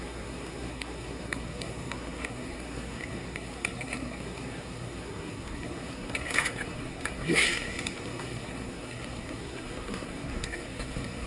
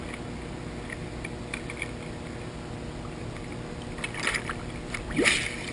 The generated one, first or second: first